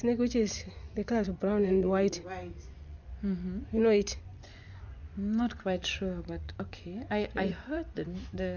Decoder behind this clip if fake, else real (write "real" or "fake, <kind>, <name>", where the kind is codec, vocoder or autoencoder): fake, vocoder, Vocos